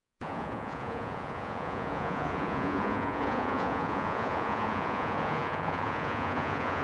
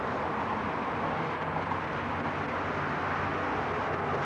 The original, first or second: second